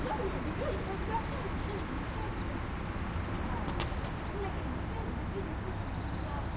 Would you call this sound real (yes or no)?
yes